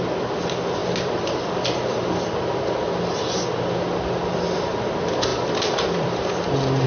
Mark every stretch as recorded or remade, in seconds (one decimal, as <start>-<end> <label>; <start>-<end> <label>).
0.0-6.9 recorded